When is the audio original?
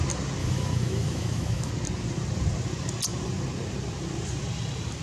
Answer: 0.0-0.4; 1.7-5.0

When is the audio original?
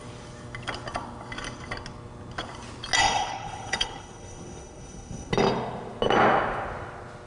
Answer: 0.0-3.0; 5.3-7.3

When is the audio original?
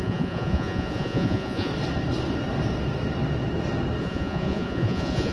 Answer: 1.7-4.0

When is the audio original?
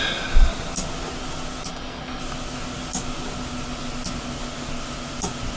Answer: 0.0-1.7; 2.2-5.6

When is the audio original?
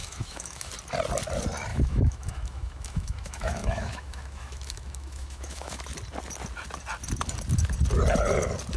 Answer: 0.7-1.7; 5.8-8.8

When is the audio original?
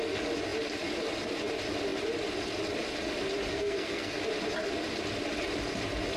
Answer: 0.0-3.5; 4.2-6.2